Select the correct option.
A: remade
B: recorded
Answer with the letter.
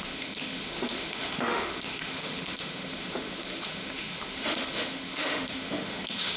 A